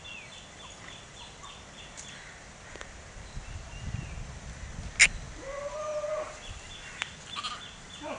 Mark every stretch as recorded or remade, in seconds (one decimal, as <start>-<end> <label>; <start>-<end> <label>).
0.0-8.2 recorded